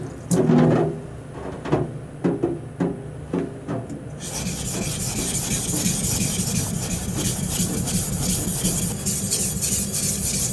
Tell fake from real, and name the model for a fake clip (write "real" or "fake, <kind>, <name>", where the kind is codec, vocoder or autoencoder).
real